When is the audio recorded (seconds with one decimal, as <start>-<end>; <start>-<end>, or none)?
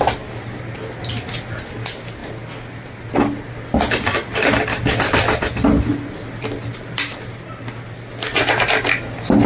0.0-9.5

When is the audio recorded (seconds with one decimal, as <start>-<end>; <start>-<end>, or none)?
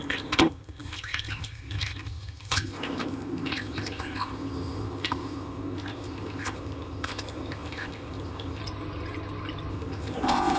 8.6-9.7